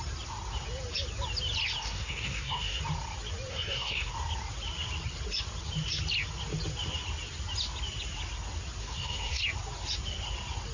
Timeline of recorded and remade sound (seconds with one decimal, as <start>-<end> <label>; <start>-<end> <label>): 0.0-1.8 recorded; 1.8-2.8 remade; 2.8-3.5 recorded; 3.5-4.1 remade; 4.1-8.8 recorded; 8.8-9.4 remade; 9.4-10.7 recorded